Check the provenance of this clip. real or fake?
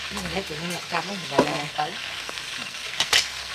fake